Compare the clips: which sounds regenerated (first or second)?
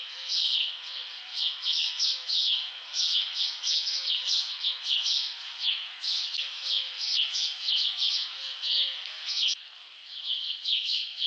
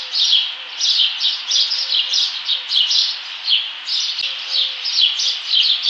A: first